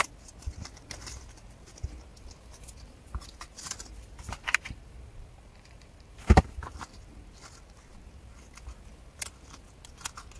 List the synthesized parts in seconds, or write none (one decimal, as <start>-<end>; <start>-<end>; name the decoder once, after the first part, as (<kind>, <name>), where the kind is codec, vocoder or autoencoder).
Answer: 2.1-7.2 (vocoder, BigVGAN v2)